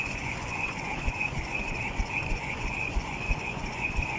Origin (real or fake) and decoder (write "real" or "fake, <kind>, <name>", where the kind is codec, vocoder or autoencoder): fake, vocoder, Vocos